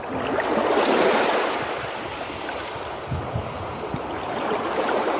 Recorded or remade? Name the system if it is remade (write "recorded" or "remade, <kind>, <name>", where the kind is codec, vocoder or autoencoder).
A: recorded